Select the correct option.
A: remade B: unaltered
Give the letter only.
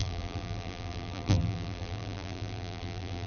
A